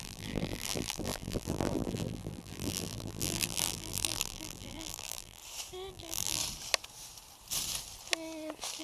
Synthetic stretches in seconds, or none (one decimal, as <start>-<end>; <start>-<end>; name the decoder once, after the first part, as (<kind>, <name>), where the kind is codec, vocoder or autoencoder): 0.0-5.4 (vocoder, BigVGAN v2); 5.9-6.4